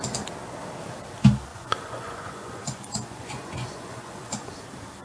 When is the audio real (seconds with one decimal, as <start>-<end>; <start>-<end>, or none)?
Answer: 0.0-1.5; 4.5-5.0